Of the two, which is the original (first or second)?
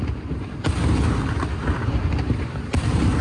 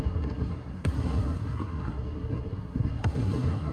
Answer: first